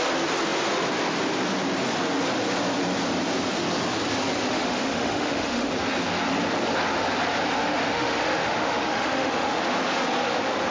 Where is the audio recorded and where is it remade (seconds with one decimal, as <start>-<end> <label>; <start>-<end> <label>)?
0.0-4.5 recorded; 4.5-5.7 remade; 5.7-7.9 recorded; 7.9-9.6 remade; 9.6-10.7 recorded